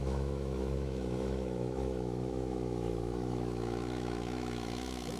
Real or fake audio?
fake